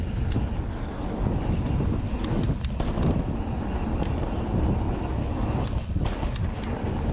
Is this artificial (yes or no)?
no